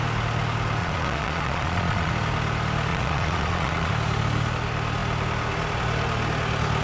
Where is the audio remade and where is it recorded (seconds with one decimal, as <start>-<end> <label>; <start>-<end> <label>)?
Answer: 0.0-0.8 recorded; 0.8-2.1 remade; 2.1-2.9 recorded; 2.9-3.9 remade; 3.9-6.8 recorded